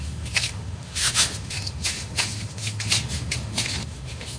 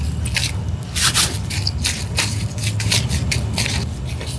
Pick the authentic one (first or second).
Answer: second